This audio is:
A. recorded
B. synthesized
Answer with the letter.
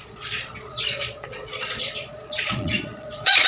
B